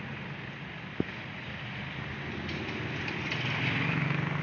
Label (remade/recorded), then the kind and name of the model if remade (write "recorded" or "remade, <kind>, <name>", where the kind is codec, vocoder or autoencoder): recorded